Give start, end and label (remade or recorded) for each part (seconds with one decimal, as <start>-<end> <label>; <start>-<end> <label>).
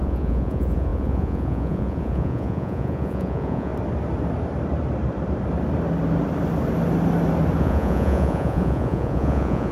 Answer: 0.0-3.7 remade; 3.7-7.6 recorded; 7.6-9.7 remade